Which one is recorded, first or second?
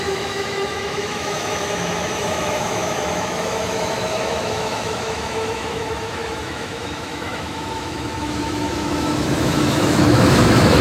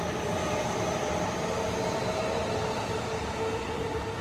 second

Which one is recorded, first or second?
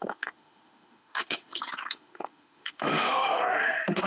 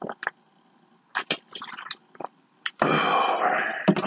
second